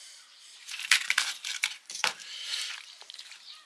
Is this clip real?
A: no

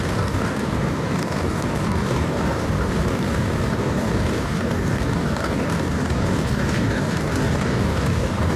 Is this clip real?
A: no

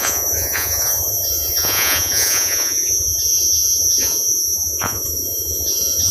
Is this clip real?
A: no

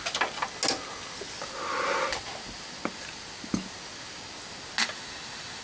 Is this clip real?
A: yes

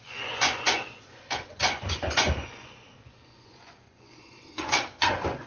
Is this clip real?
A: no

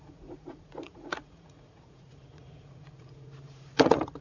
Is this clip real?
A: no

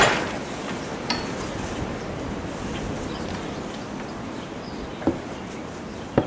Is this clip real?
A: yes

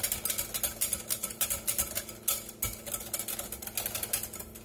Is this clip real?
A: yes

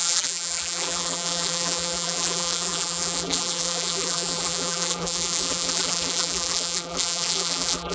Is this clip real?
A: no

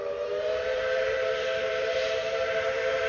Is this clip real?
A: no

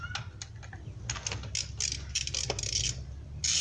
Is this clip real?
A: yes